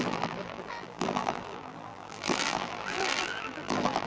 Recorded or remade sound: remade